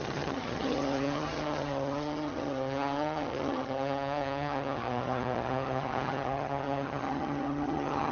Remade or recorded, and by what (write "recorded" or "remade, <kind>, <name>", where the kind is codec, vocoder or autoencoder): remade, vocoder, HiFi-GAN